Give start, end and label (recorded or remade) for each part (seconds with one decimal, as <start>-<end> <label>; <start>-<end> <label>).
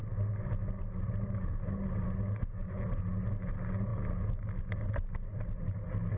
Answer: 0.0-6.2 recorded